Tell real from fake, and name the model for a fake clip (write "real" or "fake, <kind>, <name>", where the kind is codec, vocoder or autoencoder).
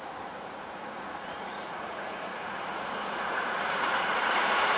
fake, vocoder, Vocos